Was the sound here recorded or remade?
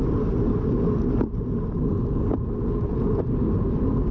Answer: recorded